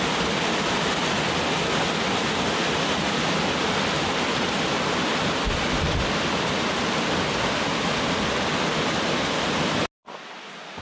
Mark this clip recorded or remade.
recorded